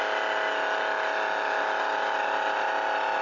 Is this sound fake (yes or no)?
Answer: no